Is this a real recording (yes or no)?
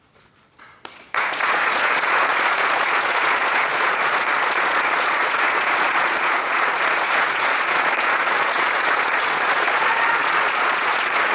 no